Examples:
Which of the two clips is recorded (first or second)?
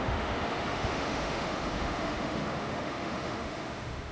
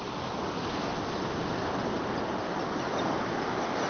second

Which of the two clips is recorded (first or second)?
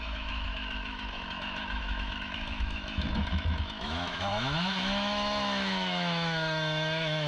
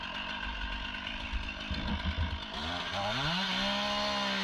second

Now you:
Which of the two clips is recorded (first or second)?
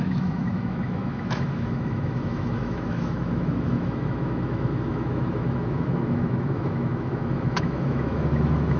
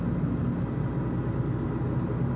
second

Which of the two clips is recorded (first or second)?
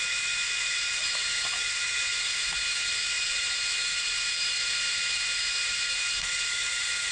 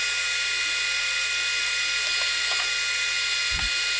second